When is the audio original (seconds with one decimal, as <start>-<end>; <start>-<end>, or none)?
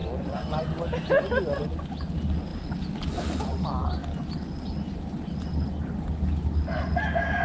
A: 0.0-7.4